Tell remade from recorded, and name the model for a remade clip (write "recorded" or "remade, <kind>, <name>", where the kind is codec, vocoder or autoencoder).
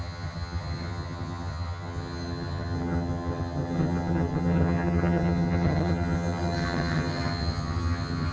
remade, vocoder, HiFi-GAN